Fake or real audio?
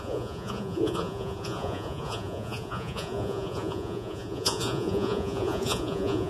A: fake